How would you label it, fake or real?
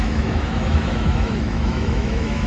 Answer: fake